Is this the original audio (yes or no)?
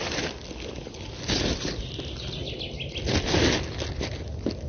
yes